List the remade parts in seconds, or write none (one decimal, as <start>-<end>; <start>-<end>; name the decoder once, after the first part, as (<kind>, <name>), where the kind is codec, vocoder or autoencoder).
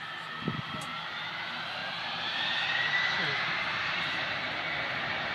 none